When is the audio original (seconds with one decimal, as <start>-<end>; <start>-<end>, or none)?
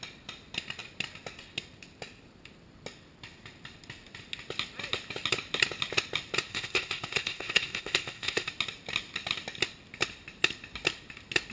0.0-6.5; 8.5-11.5